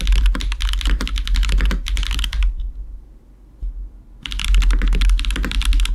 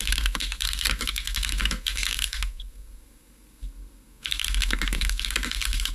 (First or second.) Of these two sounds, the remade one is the second